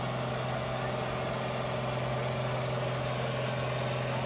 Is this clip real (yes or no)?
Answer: yes